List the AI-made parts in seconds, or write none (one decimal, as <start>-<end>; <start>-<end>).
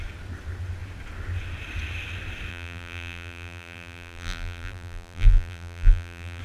2.5-6.4